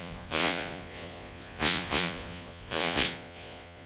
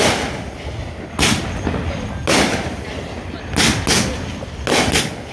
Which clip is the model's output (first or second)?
first